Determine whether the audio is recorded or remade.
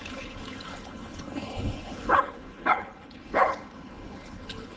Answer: remade